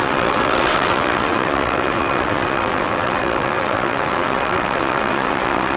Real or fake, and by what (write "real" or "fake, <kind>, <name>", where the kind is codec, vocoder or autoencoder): fake, vocoder, WaveNeXt